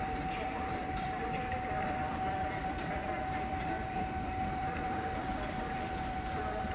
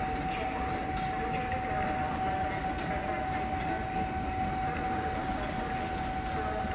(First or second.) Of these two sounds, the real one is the second